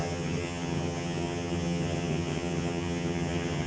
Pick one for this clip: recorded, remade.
remade